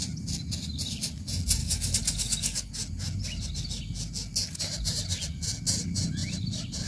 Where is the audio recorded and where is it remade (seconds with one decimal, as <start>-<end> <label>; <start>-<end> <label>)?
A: 0.0-1.6 recorded; 1.6-2.7 remade; 2.7-6.9 recorded